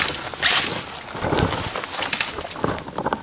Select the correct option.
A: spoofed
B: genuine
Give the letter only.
B